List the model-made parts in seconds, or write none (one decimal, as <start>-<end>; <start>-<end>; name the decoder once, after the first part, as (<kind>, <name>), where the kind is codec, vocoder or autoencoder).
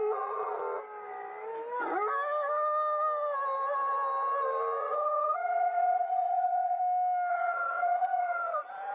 0.0-0.6 (vocoder, Vocos); 4.8-6.8; 7.3-8.9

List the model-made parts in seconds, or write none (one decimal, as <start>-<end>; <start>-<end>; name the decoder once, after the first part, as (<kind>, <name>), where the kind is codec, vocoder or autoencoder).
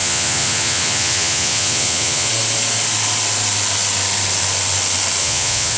0.0-2.3 (vocoder, Vocos); 5.2-5.8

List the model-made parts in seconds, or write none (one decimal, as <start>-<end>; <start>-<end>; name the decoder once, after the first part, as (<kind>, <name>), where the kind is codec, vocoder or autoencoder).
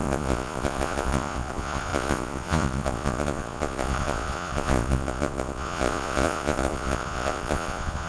0.0-8.1 (vocoder, Vocos)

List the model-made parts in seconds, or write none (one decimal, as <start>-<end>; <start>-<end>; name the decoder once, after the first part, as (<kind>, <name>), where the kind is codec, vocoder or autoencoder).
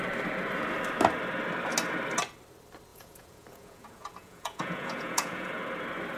2.9-5.5 (vocoder, Vocos)